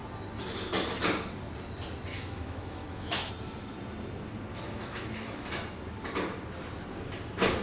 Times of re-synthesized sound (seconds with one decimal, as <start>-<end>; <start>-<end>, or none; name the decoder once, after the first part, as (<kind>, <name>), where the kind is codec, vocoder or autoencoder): 2.1-3.3 (autoencoder, DAC-VAE); 4.5-5.5